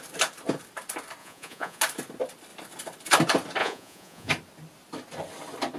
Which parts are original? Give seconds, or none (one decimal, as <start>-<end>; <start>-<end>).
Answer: 0.0-1.2; 1.8-3.6; 4.3-5.8